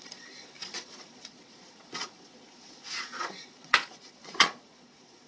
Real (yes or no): no